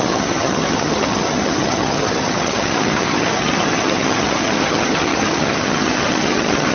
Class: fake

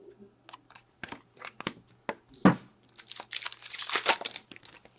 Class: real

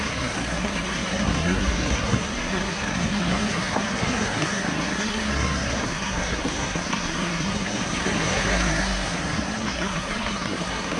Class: fake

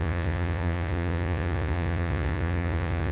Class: fake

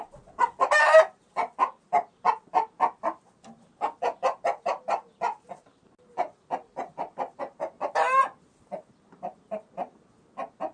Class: real